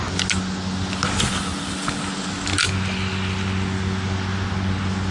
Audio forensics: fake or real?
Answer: real